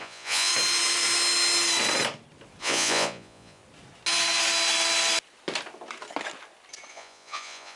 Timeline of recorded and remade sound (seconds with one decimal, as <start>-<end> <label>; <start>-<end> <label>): 0.0-0.5 remade; 0.5-2.6 recorded; 2.6-3.6 remade; 3.6-6.9 recorded; 6.9-7.8 remade